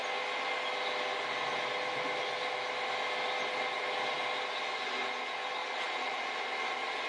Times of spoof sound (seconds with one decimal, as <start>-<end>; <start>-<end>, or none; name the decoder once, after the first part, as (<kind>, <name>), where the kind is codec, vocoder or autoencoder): 5.6-6.3 (vocoder, Vocos)